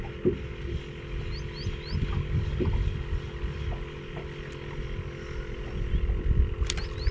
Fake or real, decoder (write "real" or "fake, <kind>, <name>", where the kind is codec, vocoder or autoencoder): real